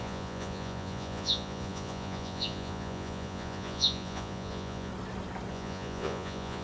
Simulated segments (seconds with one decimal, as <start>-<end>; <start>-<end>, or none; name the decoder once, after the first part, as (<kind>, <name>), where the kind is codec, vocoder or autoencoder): 0.0-4.9 (vocoder, Vocos); 5.5-6.6

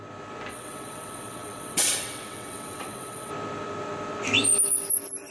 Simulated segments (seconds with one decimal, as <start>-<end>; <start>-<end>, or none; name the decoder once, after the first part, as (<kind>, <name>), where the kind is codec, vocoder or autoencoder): 0.5-3.3 (vocoder, WaveNeXt)

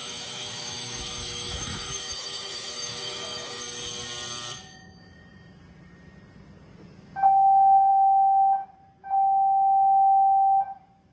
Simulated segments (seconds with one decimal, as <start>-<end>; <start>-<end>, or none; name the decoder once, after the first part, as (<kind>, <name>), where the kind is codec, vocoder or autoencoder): 0.0-3.6 (autoencoder, DAC-VAE)

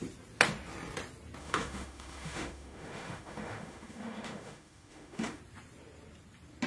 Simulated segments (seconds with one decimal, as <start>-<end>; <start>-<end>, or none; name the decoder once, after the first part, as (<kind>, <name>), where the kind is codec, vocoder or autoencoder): 1.4-5.4 (autoencoder, DAC-VAE)

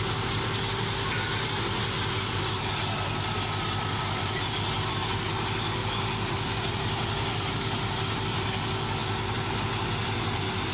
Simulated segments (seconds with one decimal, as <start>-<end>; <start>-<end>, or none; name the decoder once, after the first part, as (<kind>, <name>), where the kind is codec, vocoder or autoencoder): none

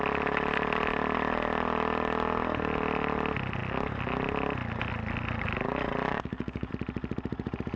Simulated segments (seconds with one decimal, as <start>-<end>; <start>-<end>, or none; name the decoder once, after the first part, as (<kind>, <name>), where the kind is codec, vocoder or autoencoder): 6.1-6.7 (codec, DAC)

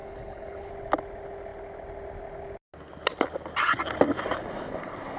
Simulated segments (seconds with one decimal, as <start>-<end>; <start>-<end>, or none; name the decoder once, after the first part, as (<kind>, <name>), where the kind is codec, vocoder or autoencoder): 0.0-0.7 (codec, HILCodec)